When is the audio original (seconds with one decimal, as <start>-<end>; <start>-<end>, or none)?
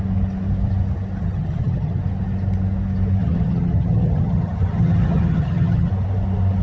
0.0-1.2; 2.0-3.2; 5.9-6.6